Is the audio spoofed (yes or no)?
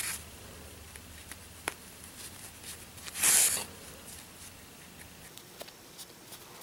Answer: no